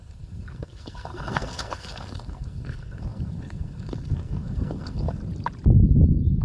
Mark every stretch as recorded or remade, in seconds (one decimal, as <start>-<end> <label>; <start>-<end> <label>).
0.0-5.2 remade; 5.2-6.4 recorded